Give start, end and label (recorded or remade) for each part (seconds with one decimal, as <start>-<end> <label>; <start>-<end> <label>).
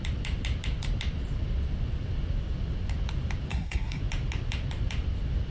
0.0-3.5 recorded; 3.5-4.0 remade; 4.0-5.5 recorded